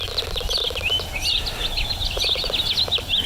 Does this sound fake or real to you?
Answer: real